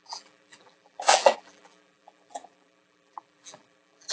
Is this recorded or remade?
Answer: remade